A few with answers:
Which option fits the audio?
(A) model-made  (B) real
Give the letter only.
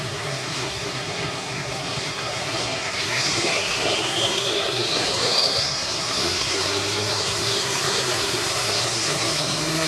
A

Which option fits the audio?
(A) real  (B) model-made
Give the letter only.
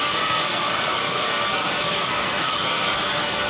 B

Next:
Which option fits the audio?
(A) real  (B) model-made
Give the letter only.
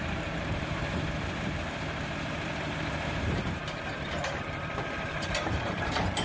B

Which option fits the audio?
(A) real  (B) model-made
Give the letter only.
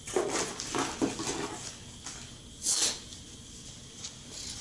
A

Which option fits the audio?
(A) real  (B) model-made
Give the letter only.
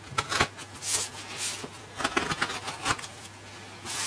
A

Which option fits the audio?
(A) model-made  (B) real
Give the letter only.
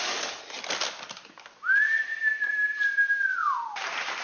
B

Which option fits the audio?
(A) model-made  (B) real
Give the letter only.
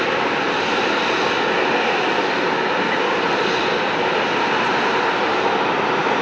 B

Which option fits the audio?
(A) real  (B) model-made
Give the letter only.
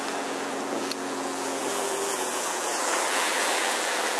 B